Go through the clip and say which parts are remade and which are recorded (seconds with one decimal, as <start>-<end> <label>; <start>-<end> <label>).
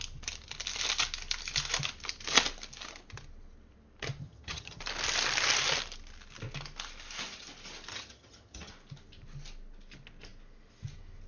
0.0-4.2 recorded; 4.2-4.8 remade; 4.8-7.9 recorded; 7.9-8.7 remade; 8.7-11.3 recorded